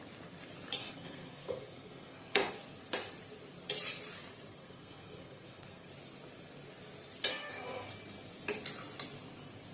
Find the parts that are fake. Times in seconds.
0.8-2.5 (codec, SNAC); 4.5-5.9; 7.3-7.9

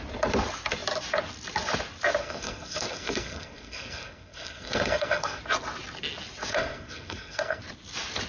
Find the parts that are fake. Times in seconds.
2.2-5.4 (codec, SNAC); 6.5-7.6